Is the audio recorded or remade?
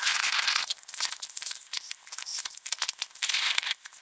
remade